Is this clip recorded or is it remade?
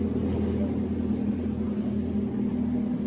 recorded